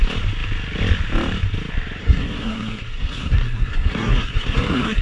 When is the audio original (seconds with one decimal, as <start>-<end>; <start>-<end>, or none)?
0.0-2.0